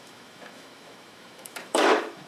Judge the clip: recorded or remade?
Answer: remade